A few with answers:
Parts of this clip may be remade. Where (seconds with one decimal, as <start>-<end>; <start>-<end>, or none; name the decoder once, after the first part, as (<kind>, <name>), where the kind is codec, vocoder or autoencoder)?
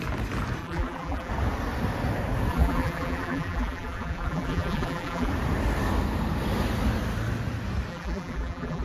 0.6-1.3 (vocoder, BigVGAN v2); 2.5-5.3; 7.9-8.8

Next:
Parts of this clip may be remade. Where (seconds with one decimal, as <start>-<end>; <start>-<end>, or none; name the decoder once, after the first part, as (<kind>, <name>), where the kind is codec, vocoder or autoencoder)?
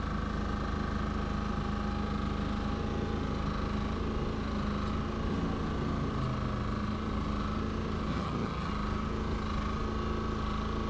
8.1-8.7 (vocoder, HiFi-GAN)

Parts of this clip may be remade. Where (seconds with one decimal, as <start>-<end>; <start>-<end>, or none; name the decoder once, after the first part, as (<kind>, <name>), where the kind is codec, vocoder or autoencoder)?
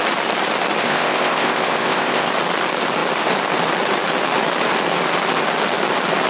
0.8-2.3 (codec, ZipCodec)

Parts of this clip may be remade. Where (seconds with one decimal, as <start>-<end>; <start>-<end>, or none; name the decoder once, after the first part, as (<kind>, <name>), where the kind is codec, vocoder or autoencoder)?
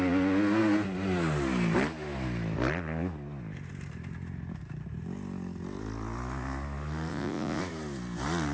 7.1-7.6 (vocoder, Vocos)